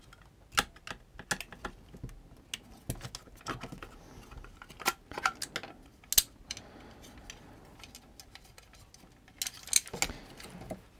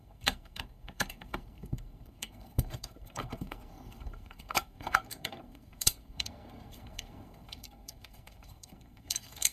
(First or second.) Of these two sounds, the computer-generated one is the second